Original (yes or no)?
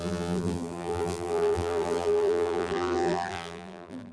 no